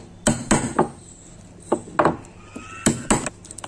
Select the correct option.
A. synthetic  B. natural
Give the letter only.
B